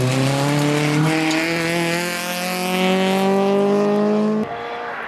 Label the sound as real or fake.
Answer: real